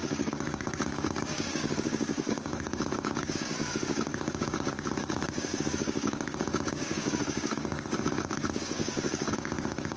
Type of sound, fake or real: fake